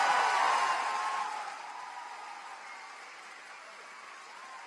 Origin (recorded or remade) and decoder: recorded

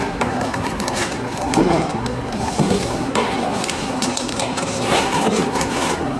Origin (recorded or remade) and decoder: remade, codec, SNAC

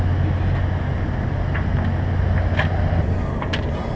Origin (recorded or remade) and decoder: recorded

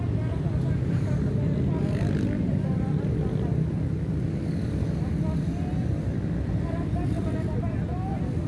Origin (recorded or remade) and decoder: recorded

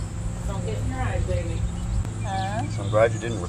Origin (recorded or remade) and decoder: recorded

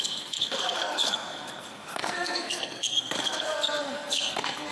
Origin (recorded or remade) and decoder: remade, codec, SNAC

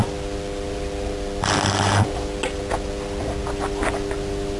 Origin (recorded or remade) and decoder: recorded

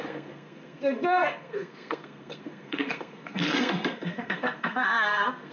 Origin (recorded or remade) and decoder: remade, codec, SNAC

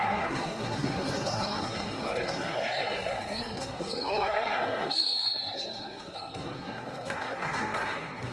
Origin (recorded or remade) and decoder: remade, codec, SNAC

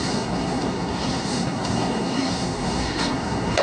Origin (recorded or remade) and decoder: remade, codec, SNAC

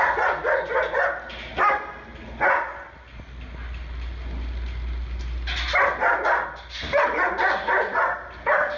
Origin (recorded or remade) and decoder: recorded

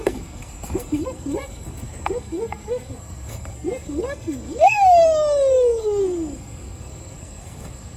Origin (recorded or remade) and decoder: remade, codec, SNAC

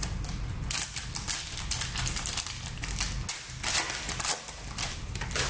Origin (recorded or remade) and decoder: recorded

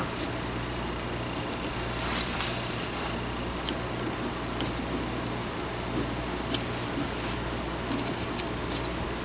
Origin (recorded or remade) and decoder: recorded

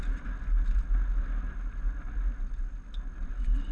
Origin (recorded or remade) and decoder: recorded